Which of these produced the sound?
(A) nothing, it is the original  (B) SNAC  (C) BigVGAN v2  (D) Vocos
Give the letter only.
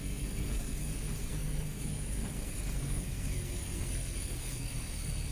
B